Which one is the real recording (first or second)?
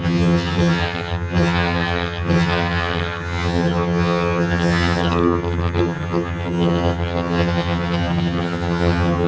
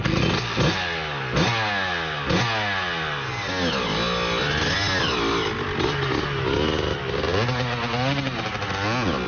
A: second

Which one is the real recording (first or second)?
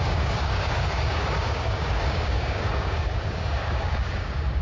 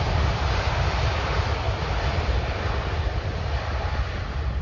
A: second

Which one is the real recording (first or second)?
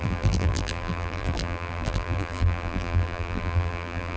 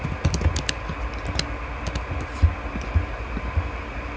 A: second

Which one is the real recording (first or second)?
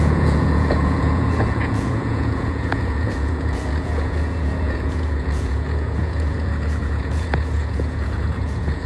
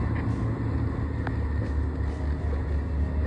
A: second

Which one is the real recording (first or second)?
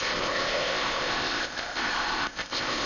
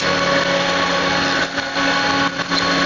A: second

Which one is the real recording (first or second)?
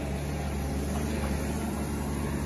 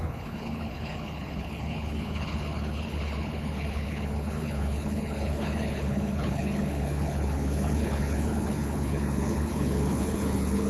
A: first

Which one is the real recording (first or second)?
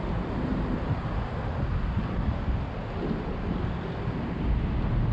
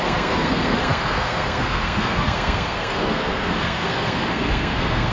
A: first